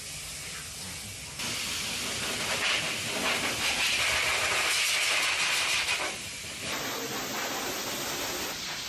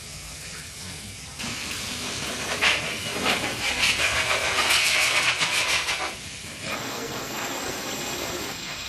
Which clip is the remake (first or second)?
second